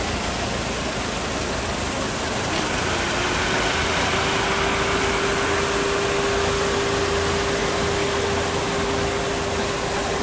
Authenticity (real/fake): real